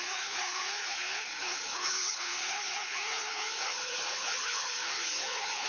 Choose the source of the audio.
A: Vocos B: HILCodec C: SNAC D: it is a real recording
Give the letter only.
B